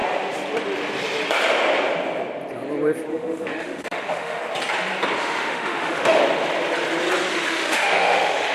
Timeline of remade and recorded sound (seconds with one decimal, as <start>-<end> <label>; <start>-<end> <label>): 0.0-3.1 recorded; 3.1-4.4 remade; 4.4-5.2 recorded; 5.2-6.2 remade; 6.2-7.3 recorded; 7.3-8.5 remade